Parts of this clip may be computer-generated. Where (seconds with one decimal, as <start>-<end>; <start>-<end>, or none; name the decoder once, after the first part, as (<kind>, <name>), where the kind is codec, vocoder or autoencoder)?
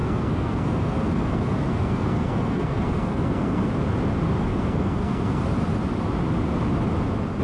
0.0-3.7 (codec, SNAC); 4.5-5.4